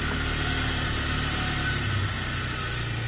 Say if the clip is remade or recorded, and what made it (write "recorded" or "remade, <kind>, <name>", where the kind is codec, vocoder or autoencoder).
recorded